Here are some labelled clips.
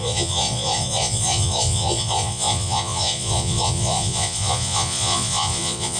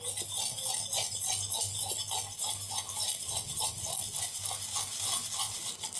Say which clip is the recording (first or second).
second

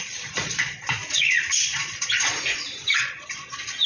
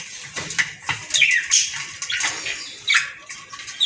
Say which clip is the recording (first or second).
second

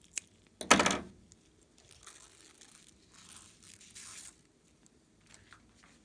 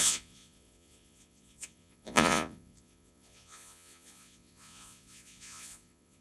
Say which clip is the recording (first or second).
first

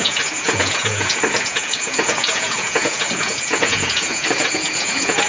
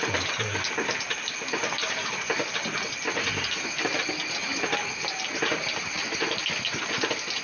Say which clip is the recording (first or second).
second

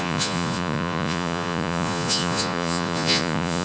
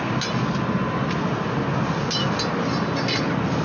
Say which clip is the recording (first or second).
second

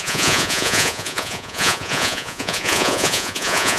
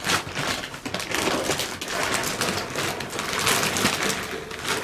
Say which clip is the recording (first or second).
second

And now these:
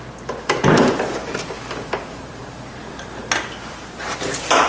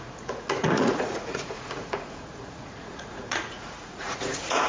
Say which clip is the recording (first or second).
first